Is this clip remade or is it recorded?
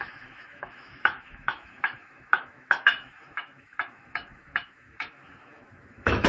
remade